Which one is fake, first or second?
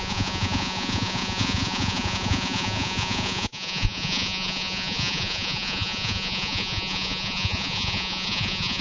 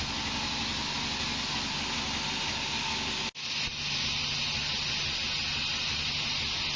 first